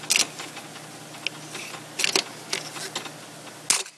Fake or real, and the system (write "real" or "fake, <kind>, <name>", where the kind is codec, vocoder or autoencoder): real